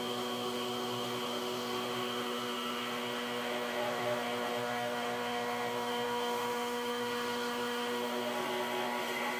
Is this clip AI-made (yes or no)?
yes